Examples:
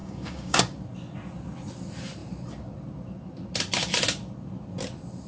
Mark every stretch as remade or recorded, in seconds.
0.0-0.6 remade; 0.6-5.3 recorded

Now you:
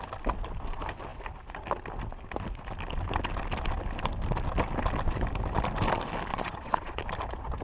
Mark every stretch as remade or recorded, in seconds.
0.0-6.3 recorded; 6.3-7.0 remade; 7.0-7.6 recorded

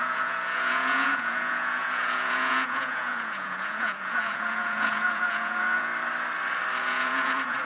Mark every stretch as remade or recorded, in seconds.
0.0-5.9 remade; 5.9-6.8 recorded; 6.8-7.7 remade